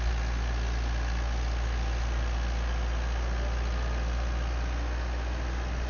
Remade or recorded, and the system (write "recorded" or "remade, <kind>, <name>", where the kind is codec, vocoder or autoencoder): recorded